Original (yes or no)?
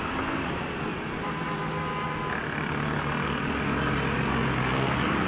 yes